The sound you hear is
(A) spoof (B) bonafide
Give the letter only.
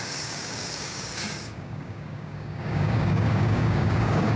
A